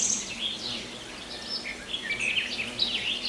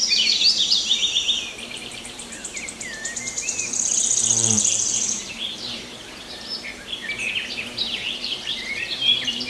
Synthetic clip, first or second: second